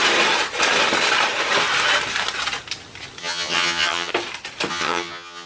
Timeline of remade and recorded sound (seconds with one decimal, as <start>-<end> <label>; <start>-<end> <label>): 0.0-3.2 recorded; 3.2-4.1 remade; 4.1-4.7 recorded; 4.7-5.5 remade